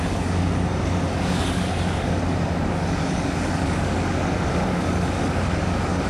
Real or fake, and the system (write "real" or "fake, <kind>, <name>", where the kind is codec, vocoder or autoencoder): fake, codec, DAC